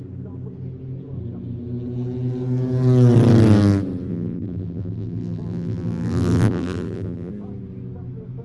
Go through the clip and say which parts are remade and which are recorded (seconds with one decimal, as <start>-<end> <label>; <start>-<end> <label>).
0.0-4.1 recorded; 4.1-7.3 remade; 7.3-8.4 recorded